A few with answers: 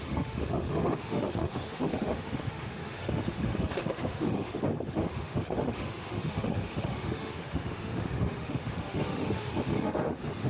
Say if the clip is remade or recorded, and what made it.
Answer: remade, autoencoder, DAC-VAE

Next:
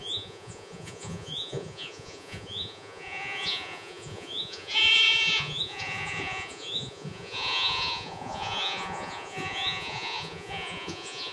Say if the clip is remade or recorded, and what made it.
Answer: remade, vocoder, Vocos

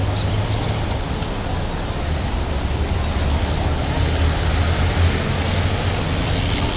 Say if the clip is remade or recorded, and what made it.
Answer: recorded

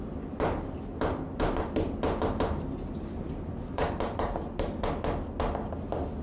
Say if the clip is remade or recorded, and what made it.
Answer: recorded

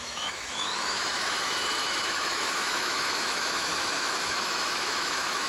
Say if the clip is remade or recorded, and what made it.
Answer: remade, autoencoder, DAC-VAE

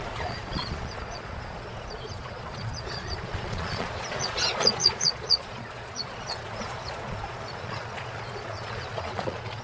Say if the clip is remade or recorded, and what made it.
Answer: remade, vocoder, Vocos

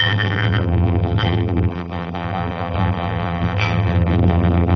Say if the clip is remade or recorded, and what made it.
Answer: remade, vocoder, BigVGAN v2